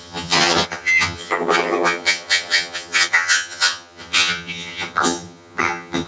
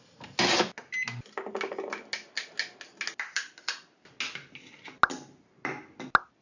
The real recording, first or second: second